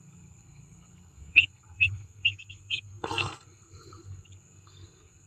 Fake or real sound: fake